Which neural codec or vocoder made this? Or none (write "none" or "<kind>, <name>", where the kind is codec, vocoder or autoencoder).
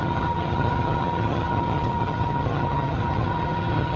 vocoder, HiFi-GAN